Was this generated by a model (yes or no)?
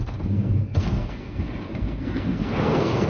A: yes